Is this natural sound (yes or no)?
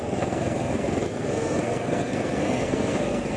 no